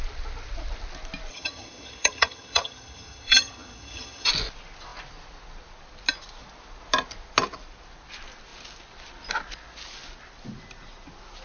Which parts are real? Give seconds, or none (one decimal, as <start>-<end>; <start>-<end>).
0.0-1.3; 4.3-11.4